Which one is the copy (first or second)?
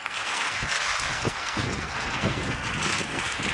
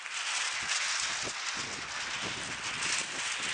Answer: first